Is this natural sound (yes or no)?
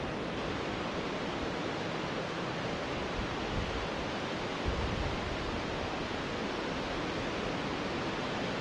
yes